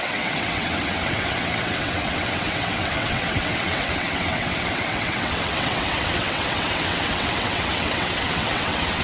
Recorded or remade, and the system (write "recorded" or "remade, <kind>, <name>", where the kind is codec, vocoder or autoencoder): remade, vocoder, WaveNeXt